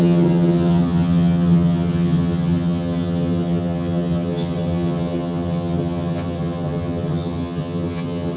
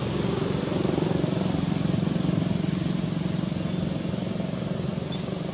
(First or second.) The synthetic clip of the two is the first